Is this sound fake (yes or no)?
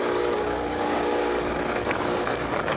yes